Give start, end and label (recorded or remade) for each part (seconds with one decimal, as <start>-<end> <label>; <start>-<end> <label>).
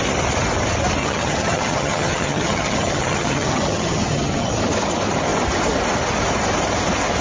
0.0-1.0 recorded; 1.0-4.6 remade; 4.6-7.2 recorded